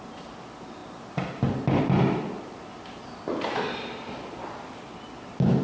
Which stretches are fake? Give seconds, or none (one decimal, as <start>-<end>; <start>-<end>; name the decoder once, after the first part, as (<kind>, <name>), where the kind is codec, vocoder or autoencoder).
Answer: none